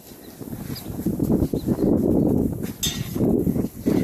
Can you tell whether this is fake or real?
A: real